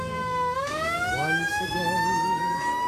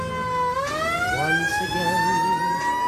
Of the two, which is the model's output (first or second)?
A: first